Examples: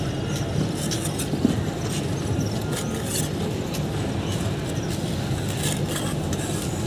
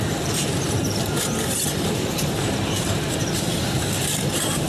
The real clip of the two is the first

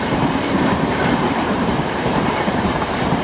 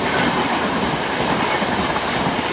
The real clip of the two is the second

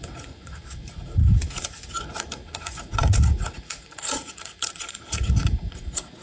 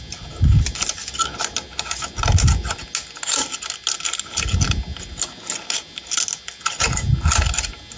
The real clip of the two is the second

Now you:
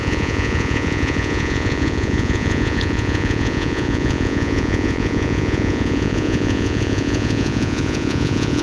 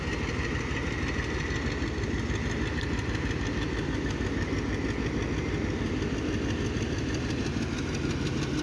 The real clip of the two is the second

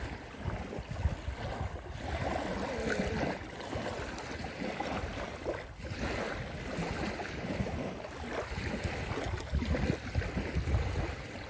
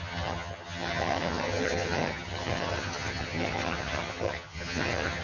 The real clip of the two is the first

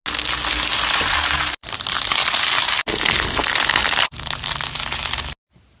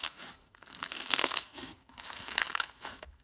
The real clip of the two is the first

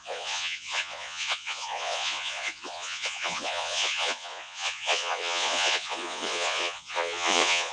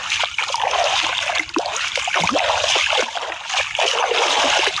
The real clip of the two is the second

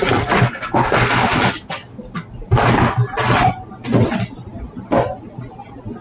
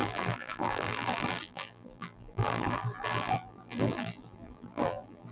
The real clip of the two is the first